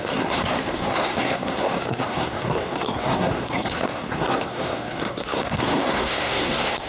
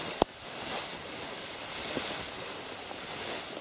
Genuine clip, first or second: second